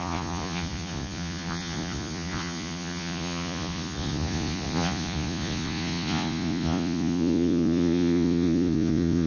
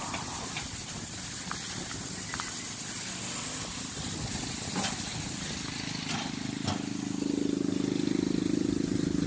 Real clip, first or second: second